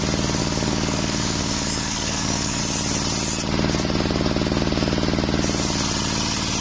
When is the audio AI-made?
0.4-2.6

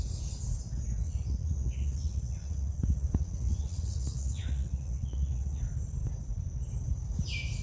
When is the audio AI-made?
1.0-5.6

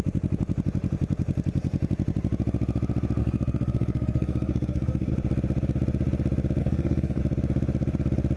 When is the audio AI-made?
3.2-5.1; 6.6-7.2